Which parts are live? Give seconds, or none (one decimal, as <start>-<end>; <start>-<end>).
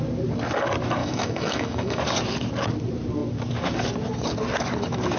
0.0-1.0; 2.0-5.2